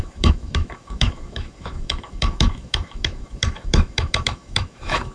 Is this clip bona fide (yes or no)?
no